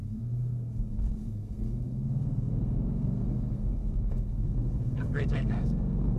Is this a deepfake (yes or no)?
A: yes